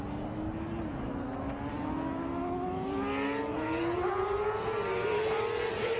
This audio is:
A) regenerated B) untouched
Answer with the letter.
B